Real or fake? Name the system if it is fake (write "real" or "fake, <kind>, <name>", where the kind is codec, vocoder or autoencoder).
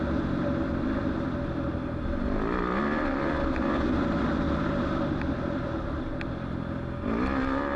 real